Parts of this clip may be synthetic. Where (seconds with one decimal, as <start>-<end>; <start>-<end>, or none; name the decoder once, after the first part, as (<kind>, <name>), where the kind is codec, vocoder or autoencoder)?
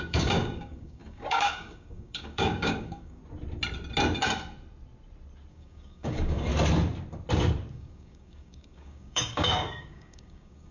0.0-3.2 (codec, DAC); 5.5-6.5; 7.7-10.7